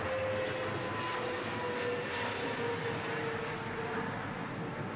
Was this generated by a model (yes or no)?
no